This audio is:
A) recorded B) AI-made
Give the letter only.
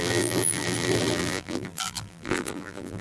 B